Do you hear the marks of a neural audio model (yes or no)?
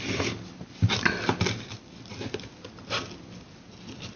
no